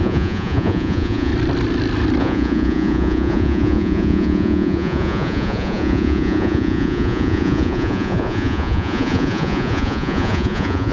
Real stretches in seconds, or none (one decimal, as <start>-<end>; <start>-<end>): 1.3-2.2